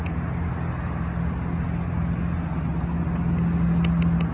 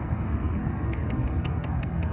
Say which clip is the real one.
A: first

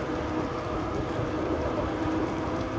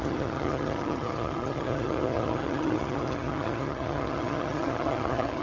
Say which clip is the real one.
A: first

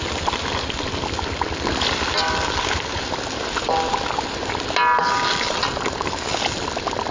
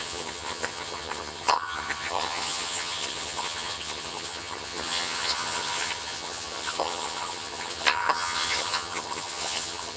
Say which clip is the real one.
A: first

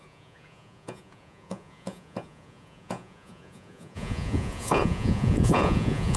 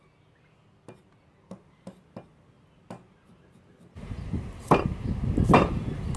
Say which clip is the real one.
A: second